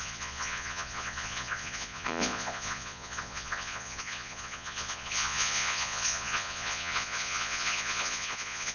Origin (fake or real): fake